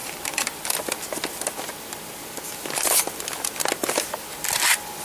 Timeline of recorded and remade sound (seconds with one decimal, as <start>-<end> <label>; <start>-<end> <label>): 0.0-3.0 remade; 3.0-5.0 recorded